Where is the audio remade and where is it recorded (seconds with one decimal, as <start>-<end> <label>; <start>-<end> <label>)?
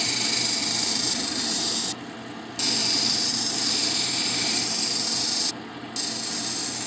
0.0-0.6 recorded; 0.6-1.9 remade; 1.9-2.8 recorded; 2.8-5.5 remade; 5.5-6.9 recorded